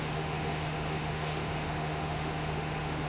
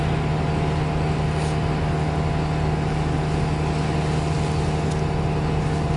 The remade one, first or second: first